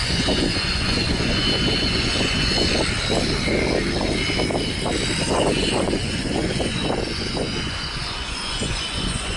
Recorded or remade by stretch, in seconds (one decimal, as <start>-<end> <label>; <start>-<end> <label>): 0.0-2.7 remade; 2.7-5.2 recorded; 5.2-9.4 remade